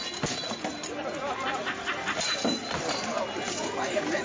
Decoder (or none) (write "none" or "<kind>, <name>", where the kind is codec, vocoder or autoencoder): none